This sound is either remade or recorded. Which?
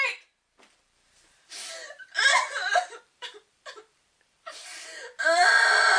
remade